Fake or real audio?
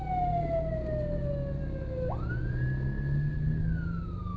real